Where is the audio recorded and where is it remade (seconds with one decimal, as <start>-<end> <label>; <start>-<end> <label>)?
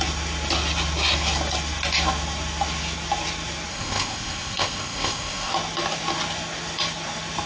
0.0-3.7 recorded; 3.7-5.5 remade; 5.5-7.5 recorded